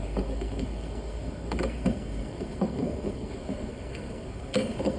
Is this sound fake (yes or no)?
yes